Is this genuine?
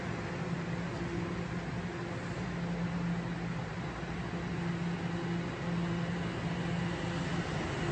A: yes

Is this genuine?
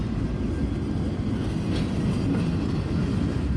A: yes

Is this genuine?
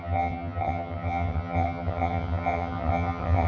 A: no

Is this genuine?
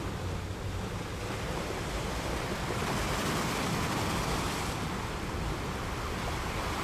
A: yes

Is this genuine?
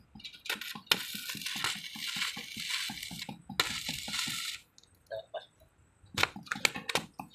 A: yes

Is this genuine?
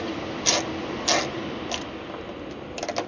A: yes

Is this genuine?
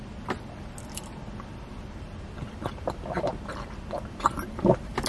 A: yes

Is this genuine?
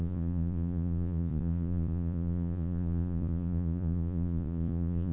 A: no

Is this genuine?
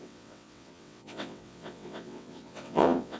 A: no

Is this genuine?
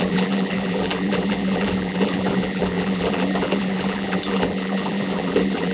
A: no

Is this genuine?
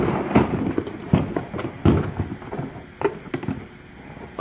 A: yes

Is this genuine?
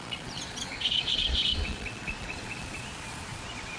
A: no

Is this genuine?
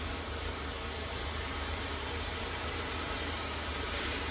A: no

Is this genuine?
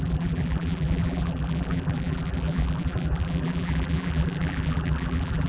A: no